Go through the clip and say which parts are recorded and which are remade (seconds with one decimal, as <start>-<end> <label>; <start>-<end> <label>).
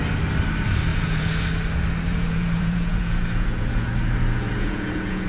0.0-0.9 recorded; 0.9-1.4 remade; 1.4-2.1 recorded; 2.1-5.3 remade